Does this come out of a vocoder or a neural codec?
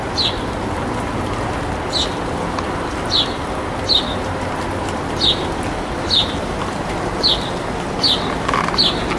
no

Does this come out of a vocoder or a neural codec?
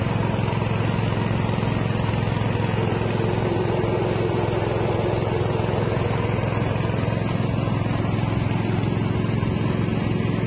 no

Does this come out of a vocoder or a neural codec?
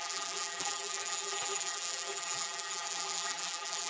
yes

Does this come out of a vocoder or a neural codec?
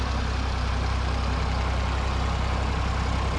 no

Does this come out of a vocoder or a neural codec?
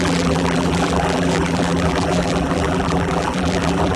yes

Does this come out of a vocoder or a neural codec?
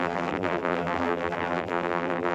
yes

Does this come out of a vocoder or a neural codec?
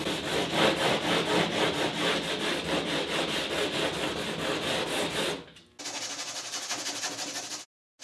no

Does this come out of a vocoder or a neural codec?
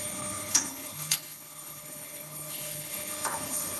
yes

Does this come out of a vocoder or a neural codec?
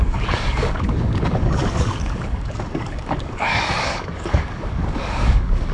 yes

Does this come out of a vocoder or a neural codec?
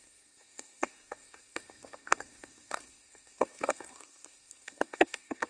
yes